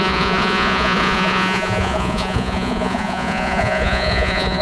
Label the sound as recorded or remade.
remade